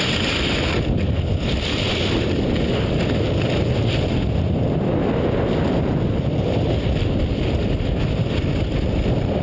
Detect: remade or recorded recorded